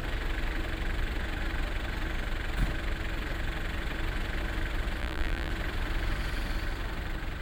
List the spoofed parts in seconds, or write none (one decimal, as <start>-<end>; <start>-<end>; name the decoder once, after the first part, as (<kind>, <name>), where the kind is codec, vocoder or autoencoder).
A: 5.0-5.5 (vocoder, BigVGAN v2)